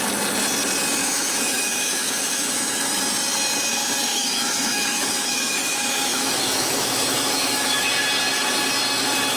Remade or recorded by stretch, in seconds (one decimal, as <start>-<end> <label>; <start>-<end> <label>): 0.0-1.0 recorded; 1.0-3.0 remade; 3.0-4.1 recorded; 4.1-7.9 remade; 7.9-9.4 recorded